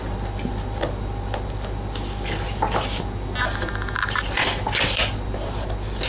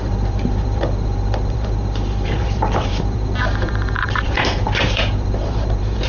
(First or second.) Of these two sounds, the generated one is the second